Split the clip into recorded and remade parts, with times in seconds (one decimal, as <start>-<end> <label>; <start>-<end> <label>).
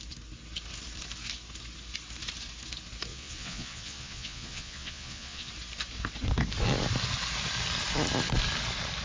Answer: 0.0-3.1 recorded; 3.1-5.5 remade; 5.5-9.0 recorded